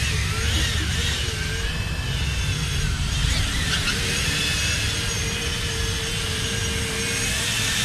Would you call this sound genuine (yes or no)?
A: yes